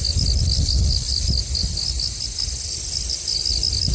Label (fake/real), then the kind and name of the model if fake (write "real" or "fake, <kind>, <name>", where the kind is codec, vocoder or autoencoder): real